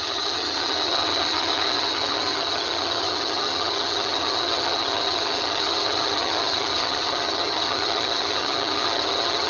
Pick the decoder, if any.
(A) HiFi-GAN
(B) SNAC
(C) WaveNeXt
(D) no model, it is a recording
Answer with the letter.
A